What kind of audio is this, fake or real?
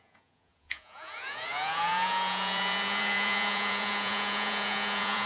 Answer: fake